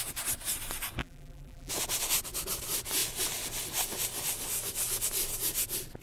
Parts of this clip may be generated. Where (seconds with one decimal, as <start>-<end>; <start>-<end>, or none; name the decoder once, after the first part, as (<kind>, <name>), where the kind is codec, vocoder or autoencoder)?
1.0-1.7 (vocoder, BigVGAN v2)